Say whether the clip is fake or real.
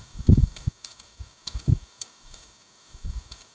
fake